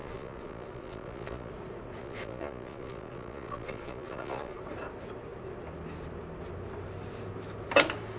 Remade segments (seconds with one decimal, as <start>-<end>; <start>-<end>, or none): 0.0-1.5; 2.0-4.6

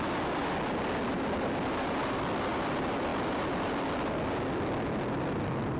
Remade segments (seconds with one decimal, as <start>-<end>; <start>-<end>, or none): none

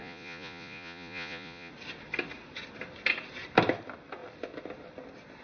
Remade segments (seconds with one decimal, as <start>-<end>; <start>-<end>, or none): 0.0-1.7